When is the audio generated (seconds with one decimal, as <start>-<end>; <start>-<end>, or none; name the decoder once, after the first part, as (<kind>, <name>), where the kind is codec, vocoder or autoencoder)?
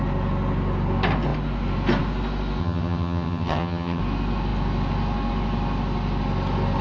2.6-4.0 (vocoder, HiFi-GAN)